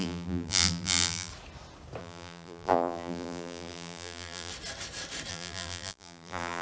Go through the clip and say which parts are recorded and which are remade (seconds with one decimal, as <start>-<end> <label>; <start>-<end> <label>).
0.0-1.3 remade; 1.3-2.0 recorded; 2.0-4.5 remade; 4.5-5.3 recorded; 5.3-6.6 remade